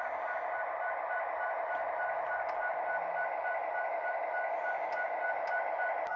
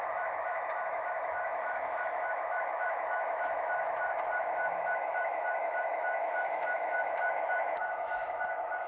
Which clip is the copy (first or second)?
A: second